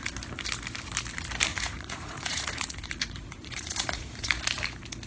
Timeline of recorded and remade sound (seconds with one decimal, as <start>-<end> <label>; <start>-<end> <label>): 0.0-1.5 recorded; 1.5-4.4 remade; 4.4-5.1 recorded